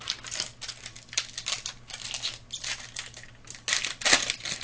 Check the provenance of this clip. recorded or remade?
recorded